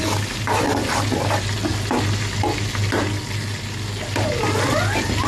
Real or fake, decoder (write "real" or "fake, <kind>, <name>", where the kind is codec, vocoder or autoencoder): real